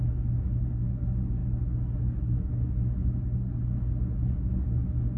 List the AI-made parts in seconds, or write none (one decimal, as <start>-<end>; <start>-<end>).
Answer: none